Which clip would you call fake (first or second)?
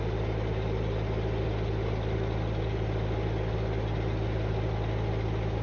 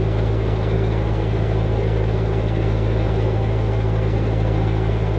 second